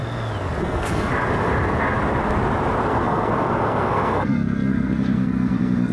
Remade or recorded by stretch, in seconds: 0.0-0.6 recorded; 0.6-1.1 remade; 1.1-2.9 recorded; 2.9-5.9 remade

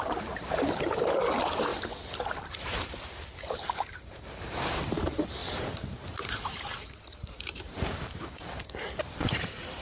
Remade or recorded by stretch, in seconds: 0.0-9.8 remade

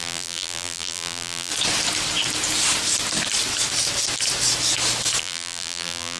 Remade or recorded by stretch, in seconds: 0.0-1.5 remade; 1.5-5.2 recorded; 5.2-6.2 remade

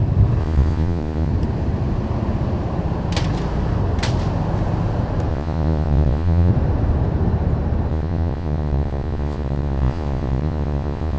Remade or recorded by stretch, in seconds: 0.0-0.4 recorded; 0.4-1.3 remade; 1.3-5.3 recorded; 5.3-6.5 remade; 6.5-7.9 recorded; 7.9-11.2 remade

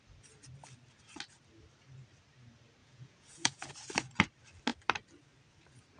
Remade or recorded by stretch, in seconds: 0.0-2.8 recorded; 2.8-3.7 remade; 3.7-6.0 recorded

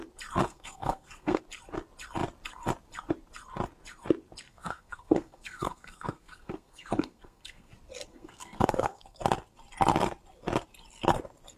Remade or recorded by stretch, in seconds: 0.0-0.5 recorded; 0.5-1.4 remade; 1.4-4.5 recorded; 4.5-7.7 remade; 7.7-8.1 recorded; 8.1-9.2 remade; 9.2-11.6 recorded

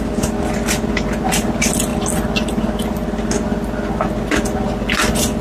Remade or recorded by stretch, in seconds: 0.0-5.4 recorded